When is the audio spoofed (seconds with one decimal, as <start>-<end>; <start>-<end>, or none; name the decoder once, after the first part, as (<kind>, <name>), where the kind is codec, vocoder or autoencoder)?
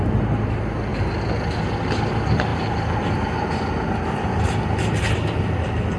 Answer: none